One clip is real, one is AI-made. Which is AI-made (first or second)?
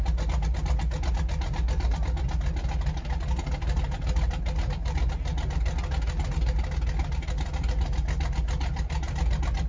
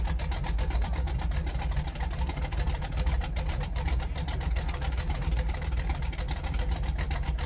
second